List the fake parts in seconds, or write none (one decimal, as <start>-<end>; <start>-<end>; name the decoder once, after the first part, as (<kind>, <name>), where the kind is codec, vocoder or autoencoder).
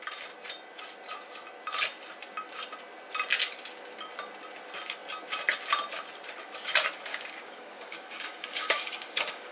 7.1-9.5 (codec, DAC)